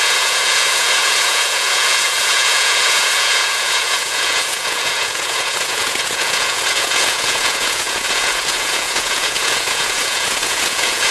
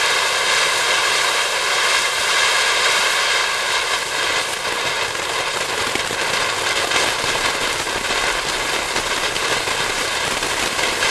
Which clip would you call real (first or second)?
second